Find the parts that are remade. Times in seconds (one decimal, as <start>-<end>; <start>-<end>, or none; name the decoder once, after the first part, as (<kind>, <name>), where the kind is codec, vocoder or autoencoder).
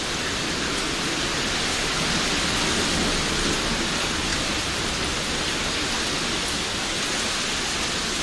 none